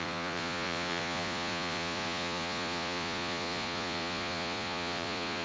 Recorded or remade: remade